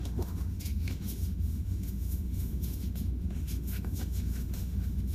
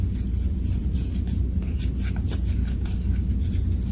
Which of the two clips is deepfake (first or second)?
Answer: first